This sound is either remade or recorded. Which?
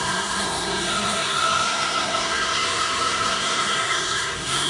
remade